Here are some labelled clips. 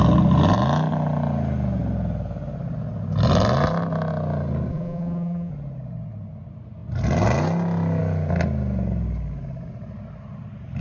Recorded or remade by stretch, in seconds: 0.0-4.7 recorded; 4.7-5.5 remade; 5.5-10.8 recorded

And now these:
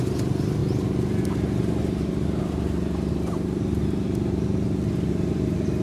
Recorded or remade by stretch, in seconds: 0.0-5.8 recorded

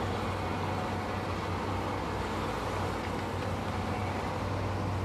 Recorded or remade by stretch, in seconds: 0.0-4.0 recorded; 4.0-4.5 remade; 4.5-5.0 recorded

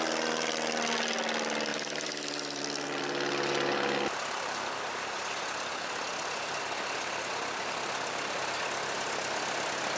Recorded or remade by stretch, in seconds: 0.0-1.7 recorded; 1.7-2.6 remade; 2.6-10.0 recorded

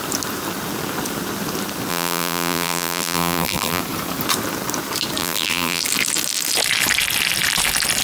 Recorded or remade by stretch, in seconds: 0.0-1.9 recorded; 1.9-3.8 remade; 3.8-5.2 recorded; 5.2-5.8 remade; 5.8-8.0 recorded

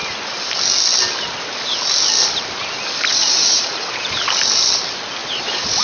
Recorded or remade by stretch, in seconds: 0.0-3.1 recorded; 3.1-4.2 remade; 4.2-5.2 recorded; 5.2-5.8 remade

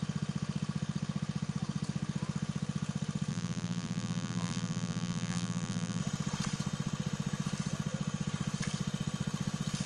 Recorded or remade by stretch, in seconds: 0.0-3.3 recorded; 3.3-6.0 remade; 6.0-9.9 recorded

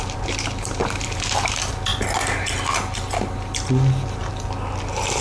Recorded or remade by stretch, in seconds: 0.0-1.9 remade; 1.9-5.2 recorded